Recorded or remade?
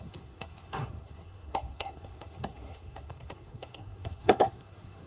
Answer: remade